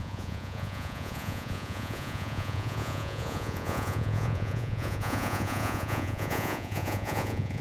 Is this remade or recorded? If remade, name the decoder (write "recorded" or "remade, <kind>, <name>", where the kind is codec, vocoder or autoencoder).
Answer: remade, vocoder, Vocos